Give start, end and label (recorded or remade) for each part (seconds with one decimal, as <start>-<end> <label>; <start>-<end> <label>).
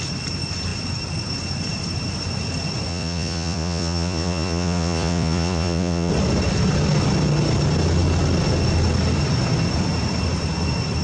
0.0-2.9 recorded; 2.9-6.1 remade; 6.1-11.0 recorded